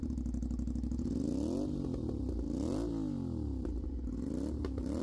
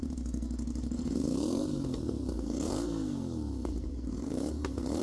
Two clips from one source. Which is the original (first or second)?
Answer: first